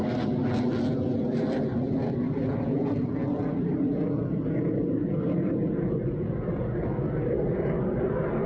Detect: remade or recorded recorded